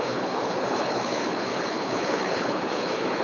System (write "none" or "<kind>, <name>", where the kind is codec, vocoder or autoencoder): codec, HILCodec